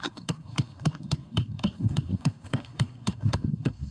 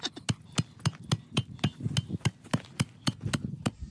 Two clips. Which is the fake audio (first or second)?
first